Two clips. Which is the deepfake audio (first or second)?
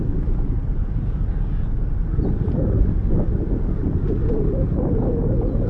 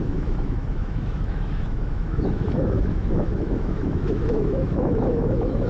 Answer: second